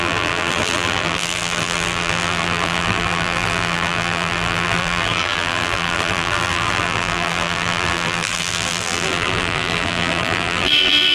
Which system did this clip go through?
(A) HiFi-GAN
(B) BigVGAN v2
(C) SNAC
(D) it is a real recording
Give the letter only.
B